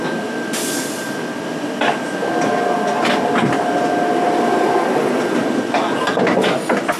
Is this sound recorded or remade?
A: recorded